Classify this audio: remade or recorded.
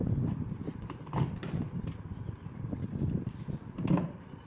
recorded